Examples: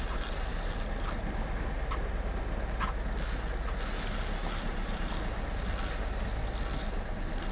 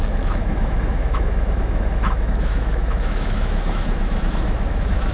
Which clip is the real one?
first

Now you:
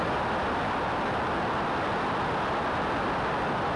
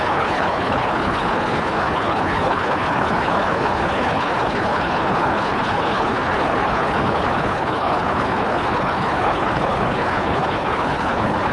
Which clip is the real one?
first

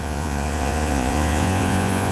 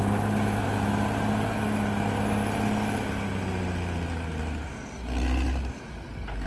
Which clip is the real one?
second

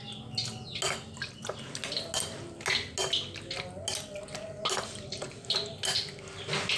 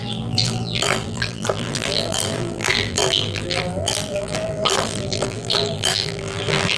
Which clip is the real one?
first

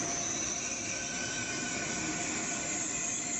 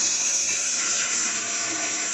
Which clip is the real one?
first